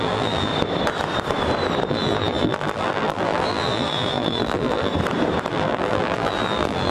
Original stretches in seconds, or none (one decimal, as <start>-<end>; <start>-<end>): 0.5-1.9; 4.9-5.5